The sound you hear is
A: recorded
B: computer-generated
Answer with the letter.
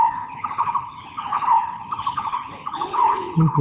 B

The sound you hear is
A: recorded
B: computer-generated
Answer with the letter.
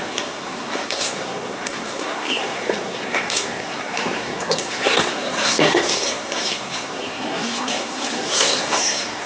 B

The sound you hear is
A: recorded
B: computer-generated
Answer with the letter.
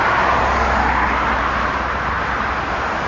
A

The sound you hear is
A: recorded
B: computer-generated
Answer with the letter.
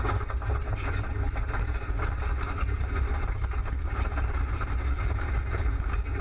A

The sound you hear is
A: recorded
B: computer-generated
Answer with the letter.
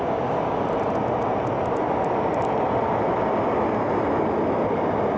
A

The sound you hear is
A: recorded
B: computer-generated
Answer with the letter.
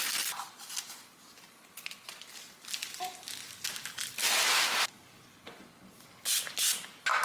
A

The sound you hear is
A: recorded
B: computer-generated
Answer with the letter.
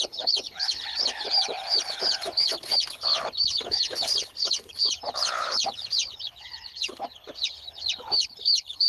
B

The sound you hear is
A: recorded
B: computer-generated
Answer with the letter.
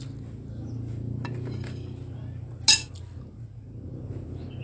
A